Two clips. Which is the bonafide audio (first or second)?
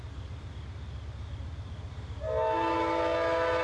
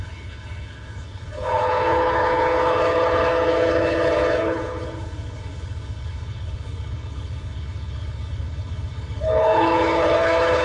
first